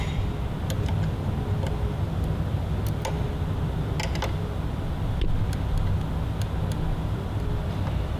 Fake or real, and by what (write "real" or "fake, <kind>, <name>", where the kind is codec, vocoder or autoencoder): real